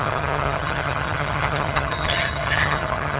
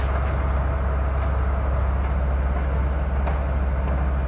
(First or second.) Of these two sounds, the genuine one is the second